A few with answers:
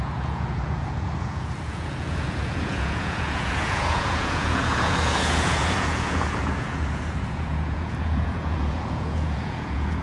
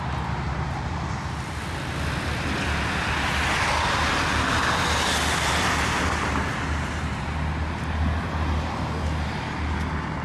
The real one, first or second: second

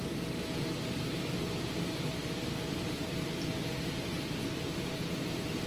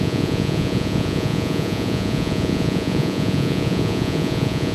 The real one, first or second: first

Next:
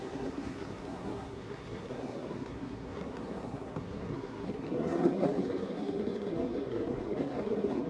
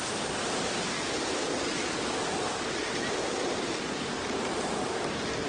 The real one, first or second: second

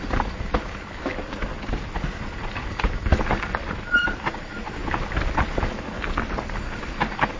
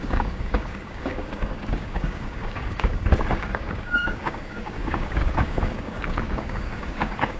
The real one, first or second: first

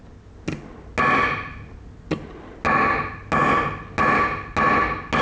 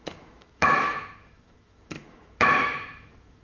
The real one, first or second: first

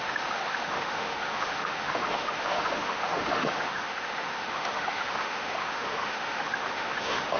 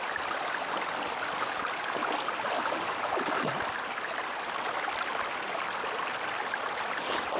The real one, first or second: second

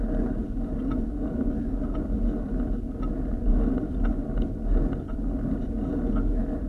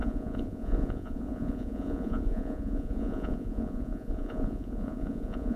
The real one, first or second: first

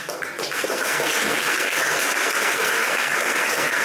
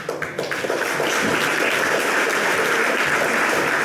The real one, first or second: second